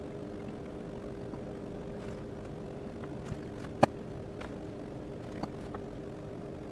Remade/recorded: recorded